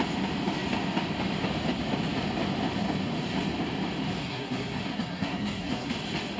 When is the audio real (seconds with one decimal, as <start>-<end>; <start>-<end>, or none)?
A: 0.0-4.2; 5.9-6.4